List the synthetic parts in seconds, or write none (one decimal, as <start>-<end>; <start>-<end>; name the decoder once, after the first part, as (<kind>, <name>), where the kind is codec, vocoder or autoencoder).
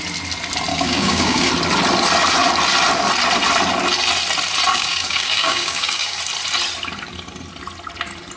0.7-1.5 (codec, DAC); 4.7-6.2